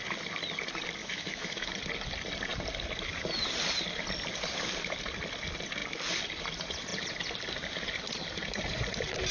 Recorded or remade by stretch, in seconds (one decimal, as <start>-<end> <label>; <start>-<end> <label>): 0.0-1.0 recorded; 1.0-1.7 remade; 1.7-9.3 recorded